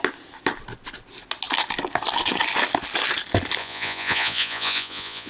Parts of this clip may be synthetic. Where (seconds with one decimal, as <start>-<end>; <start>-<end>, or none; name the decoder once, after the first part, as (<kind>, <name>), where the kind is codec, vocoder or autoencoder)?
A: 3.6-5.3 (vocoder, Vocos)